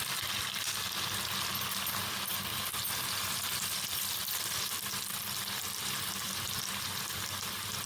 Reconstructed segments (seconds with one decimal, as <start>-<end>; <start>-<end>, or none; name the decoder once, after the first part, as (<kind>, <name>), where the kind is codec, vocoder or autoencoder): none